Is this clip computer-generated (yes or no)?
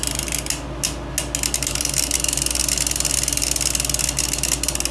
no